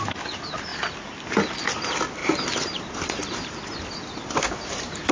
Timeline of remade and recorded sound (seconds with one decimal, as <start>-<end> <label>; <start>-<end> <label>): 0.0-5.1 recorded